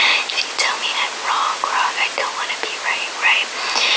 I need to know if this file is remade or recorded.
recorded